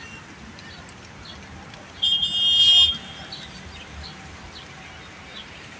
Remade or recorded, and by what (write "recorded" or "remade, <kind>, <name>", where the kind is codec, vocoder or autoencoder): recorded